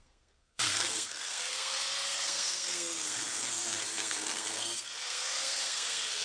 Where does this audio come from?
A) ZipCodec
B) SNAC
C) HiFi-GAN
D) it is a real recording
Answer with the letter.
B